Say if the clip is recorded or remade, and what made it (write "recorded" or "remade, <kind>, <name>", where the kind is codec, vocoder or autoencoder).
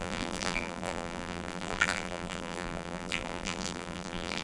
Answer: remade, vocoder, BigVGAN v2